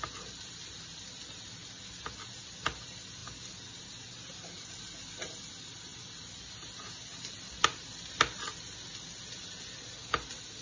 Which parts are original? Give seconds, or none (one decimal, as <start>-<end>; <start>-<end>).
0.0-10.6